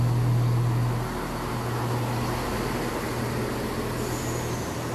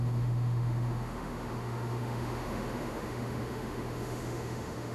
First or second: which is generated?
second